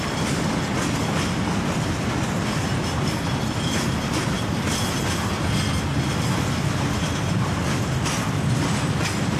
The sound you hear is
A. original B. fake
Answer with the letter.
A